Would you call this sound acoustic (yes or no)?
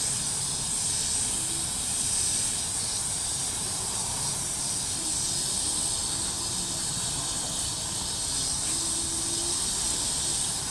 yes